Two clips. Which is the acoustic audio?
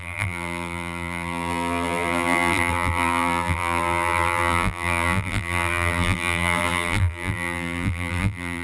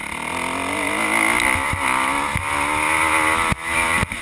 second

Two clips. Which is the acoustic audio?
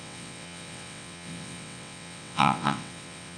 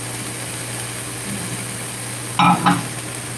second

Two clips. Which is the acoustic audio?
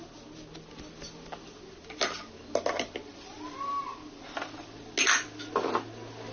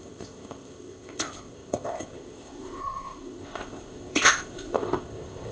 first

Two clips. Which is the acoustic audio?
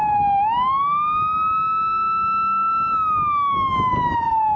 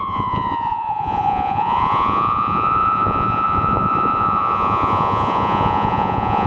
first